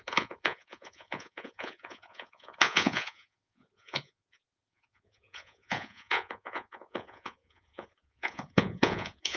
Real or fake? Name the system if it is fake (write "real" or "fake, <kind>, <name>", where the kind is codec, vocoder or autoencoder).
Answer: fake, vocoder, Vocos